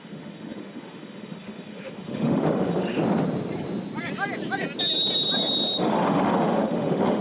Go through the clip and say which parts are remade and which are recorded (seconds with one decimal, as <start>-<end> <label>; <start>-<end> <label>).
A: 0.0-3.0 remade; 3.0-5.8 recorded; 5.8-7.2 remade